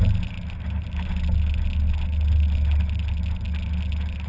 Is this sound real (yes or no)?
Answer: yes